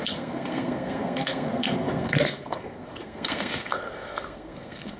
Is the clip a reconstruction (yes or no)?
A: yes